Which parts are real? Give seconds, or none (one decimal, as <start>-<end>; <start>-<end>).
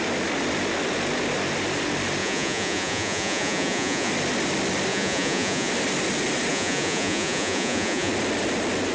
0.0-2.2; 4.1-4.9; 5.7-6.5; 8.1-8.9